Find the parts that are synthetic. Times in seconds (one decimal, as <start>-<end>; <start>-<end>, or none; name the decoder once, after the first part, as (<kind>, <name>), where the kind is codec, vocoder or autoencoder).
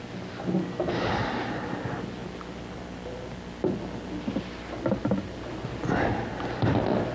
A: none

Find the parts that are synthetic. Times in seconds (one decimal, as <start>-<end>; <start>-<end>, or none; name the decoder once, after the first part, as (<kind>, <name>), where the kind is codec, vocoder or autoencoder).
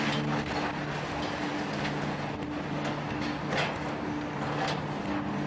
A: none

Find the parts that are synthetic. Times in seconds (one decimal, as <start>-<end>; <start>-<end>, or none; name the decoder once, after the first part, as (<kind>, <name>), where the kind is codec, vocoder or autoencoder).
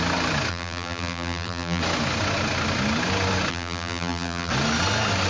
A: 0.5-1.8 (vocoder, BigVGAN v2); 3.5-4.5